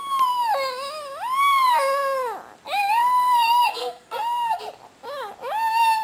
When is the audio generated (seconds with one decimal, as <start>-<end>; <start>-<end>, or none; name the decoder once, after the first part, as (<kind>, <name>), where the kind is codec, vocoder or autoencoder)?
3.0-4.6 (codec, SNAC)